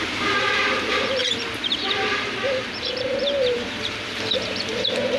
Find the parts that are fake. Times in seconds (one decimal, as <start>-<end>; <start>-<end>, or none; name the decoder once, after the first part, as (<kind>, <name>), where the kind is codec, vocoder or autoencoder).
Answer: 0.0-5.2 (vocoder, BigVGAN v2)